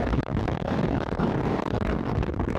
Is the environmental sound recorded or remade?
remade